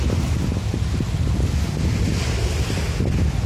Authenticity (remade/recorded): recorded